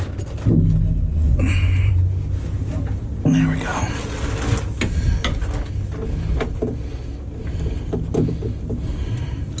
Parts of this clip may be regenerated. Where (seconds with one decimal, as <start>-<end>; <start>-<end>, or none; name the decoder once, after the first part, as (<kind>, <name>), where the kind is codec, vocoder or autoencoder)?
1.1-1.9 (vocoder, Vocos)